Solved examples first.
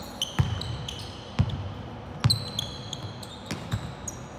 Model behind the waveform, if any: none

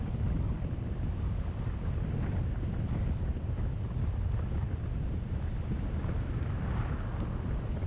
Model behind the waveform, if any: none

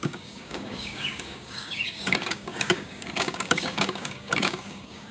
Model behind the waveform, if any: codec, DAC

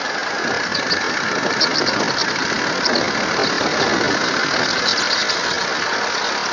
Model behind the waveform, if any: none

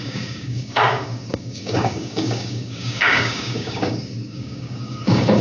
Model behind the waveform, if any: codec, DAC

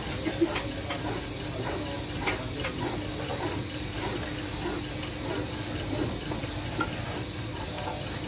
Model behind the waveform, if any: none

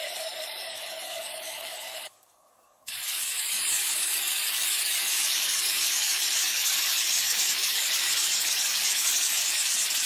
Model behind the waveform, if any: codec, DAC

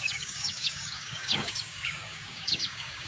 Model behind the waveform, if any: codec, DAC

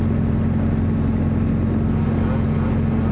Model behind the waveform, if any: none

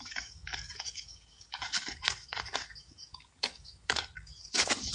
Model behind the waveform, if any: codec, DAC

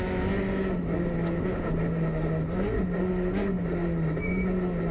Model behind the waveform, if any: none